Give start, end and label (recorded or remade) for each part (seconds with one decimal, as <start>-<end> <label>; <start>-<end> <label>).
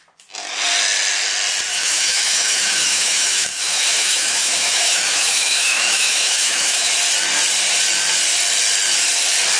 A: 0.0-1.7 recorded; 1.7-6.9 remade; 6.9-9.6 recorded